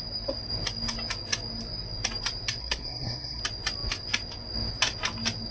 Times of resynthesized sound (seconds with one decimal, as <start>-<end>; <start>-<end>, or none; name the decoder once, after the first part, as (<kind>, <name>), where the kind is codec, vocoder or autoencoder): 2.6-3.4 (codec, SNAC)